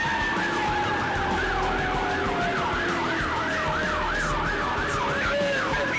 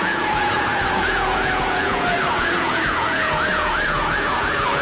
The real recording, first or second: first